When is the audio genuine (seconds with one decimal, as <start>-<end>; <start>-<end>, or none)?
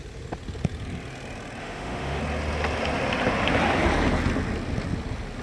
0.0-1.6; 2.2-5.4